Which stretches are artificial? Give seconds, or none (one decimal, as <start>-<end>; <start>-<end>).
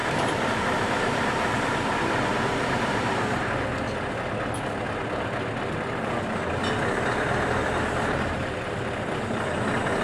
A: 0.0-3.5; 7.6-8.6